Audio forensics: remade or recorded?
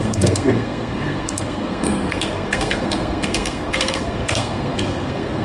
remade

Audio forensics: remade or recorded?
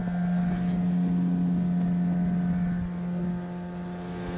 recorded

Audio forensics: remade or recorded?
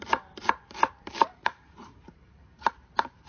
remade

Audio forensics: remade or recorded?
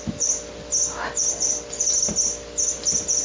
recorded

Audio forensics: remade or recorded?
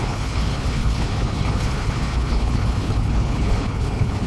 remade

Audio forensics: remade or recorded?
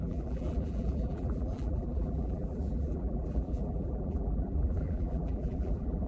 remade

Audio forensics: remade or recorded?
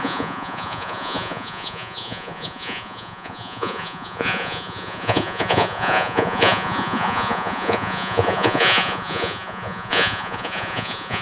remade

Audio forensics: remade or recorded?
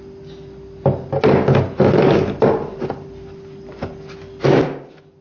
recorded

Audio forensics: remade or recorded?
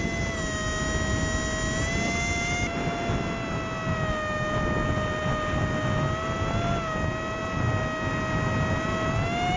recorded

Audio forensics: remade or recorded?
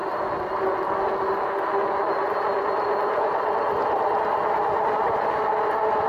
recorded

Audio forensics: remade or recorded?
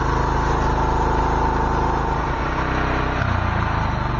recorded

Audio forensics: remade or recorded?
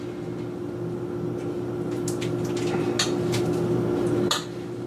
recorded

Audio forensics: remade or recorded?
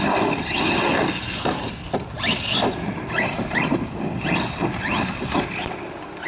recorded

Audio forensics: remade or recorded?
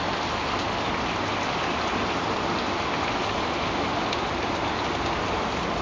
recorded